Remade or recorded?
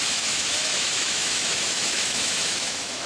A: remade